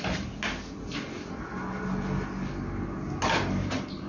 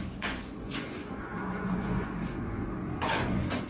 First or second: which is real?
first